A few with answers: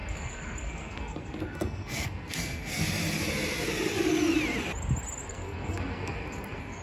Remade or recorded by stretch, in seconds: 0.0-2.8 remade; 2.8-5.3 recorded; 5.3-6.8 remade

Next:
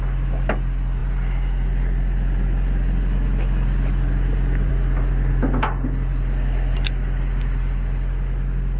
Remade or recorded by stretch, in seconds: 0.0-8.8 recorded